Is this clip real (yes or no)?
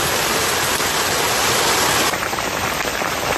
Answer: no